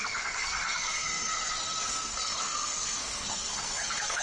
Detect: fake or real fake